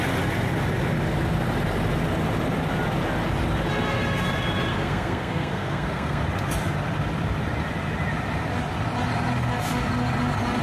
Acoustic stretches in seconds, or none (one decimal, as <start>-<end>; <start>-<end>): 0.0-4.7; 6.2-10.6